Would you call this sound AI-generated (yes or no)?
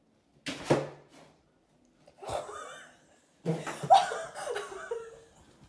no